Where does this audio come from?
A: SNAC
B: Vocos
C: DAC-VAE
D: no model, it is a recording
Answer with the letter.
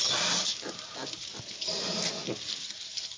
D